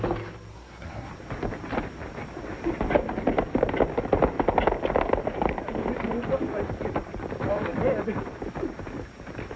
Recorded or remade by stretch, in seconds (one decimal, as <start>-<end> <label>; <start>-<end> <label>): 0.0-0.5 recorded; 0.5-1.1 remade; 1.1-9.6 recorded